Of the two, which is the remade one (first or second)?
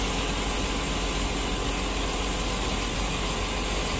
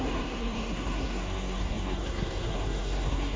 second